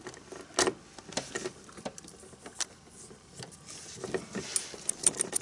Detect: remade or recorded recorded